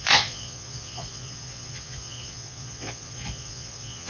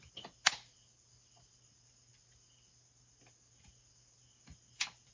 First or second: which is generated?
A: first